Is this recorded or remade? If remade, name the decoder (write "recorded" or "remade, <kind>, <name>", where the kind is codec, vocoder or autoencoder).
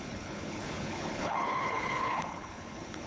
remade, codec, HILCodec